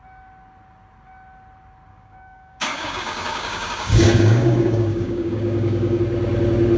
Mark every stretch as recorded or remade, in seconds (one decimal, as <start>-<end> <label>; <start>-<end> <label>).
0.0-1.9 recorded; 1.9-6.0 remade; 6.0-6.8 recorded